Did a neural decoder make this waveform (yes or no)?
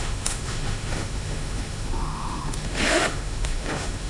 yes